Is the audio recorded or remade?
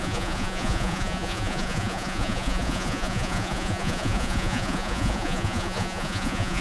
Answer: remade